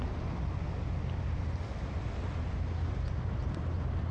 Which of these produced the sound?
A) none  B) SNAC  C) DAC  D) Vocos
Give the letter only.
A